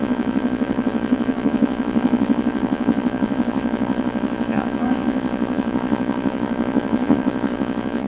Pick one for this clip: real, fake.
fake